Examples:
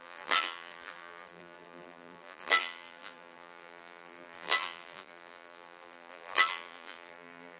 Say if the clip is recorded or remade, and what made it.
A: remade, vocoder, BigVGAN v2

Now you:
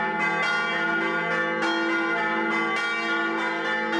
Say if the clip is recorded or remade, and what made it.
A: recorded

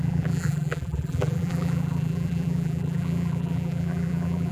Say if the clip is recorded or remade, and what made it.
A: remade, vocoder, BigVGAN v2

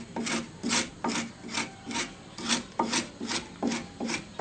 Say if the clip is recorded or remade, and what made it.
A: recorded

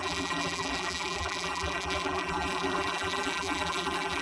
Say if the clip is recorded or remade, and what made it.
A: remade, vocoder, BigVGAN v2